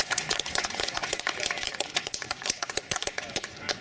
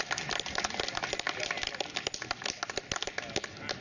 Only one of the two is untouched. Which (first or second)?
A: second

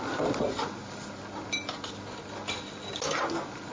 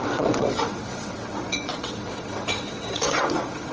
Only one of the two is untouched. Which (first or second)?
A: first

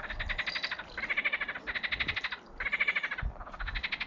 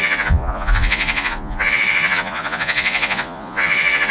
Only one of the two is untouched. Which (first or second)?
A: first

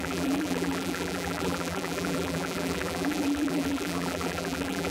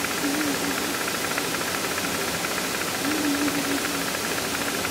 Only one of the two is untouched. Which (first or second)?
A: second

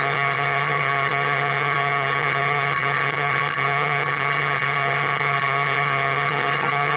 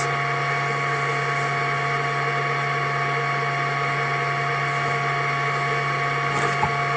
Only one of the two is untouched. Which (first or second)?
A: second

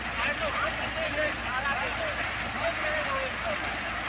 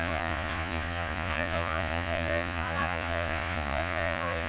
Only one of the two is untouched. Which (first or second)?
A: first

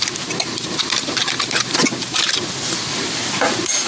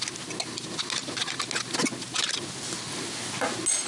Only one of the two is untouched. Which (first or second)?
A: second